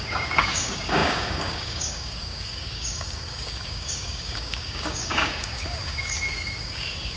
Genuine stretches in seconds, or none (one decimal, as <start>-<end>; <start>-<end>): none